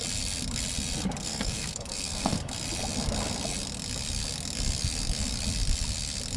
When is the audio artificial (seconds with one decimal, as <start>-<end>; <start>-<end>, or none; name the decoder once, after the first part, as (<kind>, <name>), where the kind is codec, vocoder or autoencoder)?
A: 1.2-2.5 (codec, SNAC)